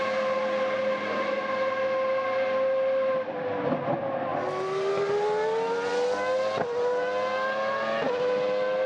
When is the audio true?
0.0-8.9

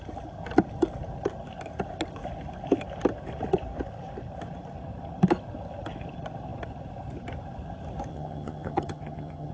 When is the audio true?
0.0-8.1

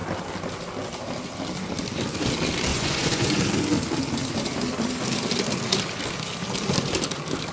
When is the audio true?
0.0-2.7; 3.4-7.5

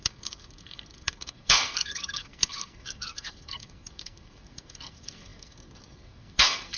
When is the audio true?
none

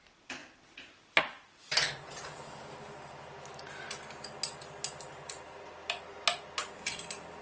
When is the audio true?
0.0-7.4